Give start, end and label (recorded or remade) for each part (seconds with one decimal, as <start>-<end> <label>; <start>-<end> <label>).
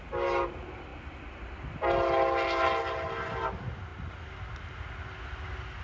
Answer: 0.0-5.8 recorded